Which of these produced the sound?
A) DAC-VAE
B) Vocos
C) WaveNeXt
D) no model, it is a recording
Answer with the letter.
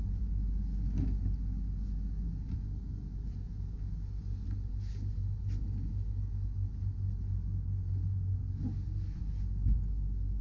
D